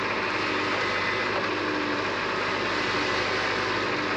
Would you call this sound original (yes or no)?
yes